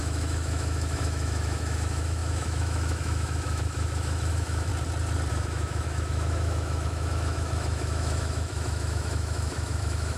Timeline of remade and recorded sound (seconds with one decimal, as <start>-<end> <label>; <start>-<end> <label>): 0.0-4.7 remade; 4.7-5.3 recorded; 5.3-10.2 remade